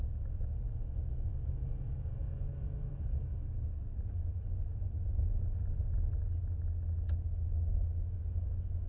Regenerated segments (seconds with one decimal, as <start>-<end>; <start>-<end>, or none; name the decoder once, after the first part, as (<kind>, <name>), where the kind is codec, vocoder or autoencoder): 2.2-3.2 (vocoder, Vocos)